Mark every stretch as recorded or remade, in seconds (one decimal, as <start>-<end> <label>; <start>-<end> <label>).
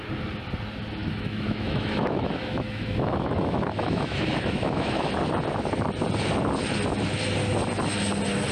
0.0-1.0 recorded; 1.0-5.1 remade; 5.1-8.5 recorded